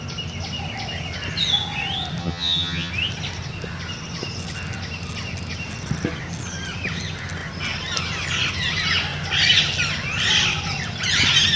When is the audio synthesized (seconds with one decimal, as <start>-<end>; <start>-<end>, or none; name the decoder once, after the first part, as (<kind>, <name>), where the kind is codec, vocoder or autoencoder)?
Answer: 2.2-2.9 (vocoder, HiFi-GAN)